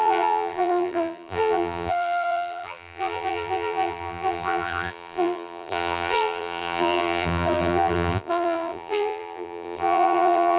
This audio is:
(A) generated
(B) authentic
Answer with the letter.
A